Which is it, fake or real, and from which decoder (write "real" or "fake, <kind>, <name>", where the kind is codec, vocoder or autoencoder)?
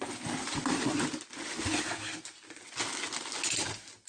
real